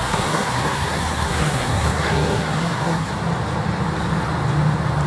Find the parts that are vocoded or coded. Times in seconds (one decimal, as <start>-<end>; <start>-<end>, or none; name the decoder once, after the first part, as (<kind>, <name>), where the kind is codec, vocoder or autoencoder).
0.0-3.1 (codec, SNAC)

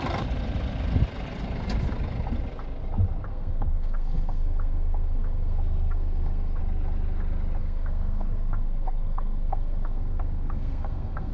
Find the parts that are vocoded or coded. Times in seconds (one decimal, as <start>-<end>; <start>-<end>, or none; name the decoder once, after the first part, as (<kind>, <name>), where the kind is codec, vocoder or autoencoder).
3.3-6.6 (codec, SNAC); 7.6-11.3

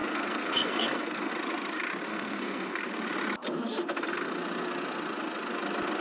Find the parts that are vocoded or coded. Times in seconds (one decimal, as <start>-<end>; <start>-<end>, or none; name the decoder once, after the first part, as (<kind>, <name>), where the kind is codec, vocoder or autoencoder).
0.0-1.3 (codec, SNAC); 2.1-2.8

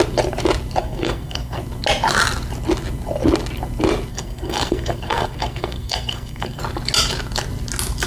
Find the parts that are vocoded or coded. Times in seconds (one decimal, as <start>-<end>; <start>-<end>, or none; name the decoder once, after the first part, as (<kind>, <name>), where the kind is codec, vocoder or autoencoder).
0.8-1.6 (codec, SNAC); 4.1-6.6

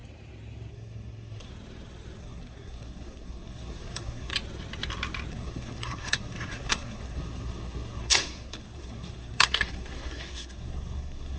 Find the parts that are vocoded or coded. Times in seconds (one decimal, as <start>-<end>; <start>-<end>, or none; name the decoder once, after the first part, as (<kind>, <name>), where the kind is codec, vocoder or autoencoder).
0.7-1.5 (codec, SNAC); 2.2-4.3; 5.3-11.4